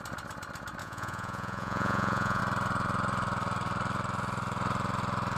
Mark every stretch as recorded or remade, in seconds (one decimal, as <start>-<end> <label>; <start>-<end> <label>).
0.0-0.8 recorded; 0.8-2.4 remade; 2.4-5.4 recorded